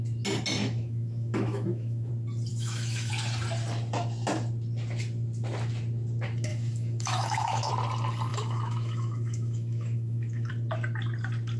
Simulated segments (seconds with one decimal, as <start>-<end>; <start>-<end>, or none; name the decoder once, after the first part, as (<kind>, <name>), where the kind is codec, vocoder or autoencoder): 0.6-2.1 (autoencoder, DAC-VAE); 2.5-3.1; 6.5-7.7; 8.3-10.5